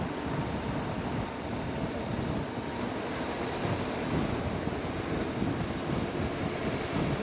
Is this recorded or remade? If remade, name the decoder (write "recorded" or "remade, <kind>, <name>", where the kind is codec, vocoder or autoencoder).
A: recorded